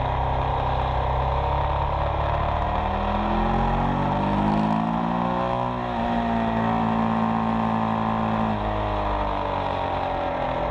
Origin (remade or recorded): recorded